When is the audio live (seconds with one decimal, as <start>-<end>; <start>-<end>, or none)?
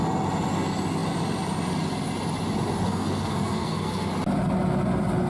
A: 0.0-2.9; 4.1-5.3